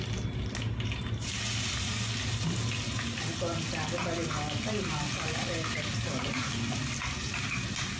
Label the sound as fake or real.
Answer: real